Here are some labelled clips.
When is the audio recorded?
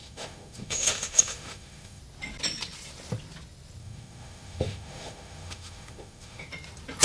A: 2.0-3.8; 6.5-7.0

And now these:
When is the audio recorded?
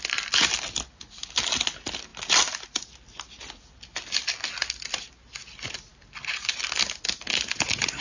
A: 0.0-8.0